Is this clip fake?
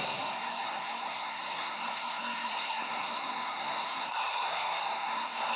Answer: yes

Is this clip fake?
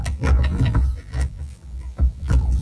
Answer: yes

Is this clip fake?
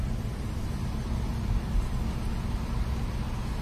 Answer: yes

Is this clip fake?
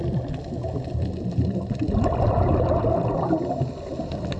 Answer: no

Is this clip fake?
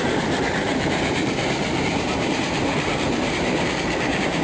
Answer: yes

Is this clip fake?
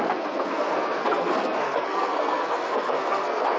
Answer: yes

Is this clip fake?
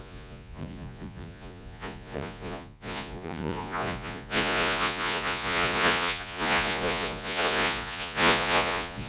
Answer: yes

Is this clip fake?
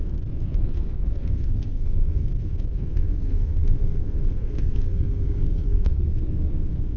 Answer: yes